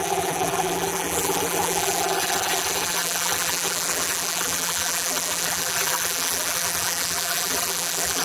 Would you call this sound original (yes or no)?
no